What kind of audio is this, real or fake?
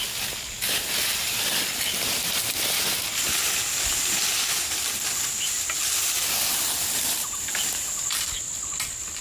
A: real